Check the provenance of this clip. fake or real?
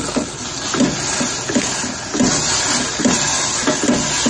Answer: real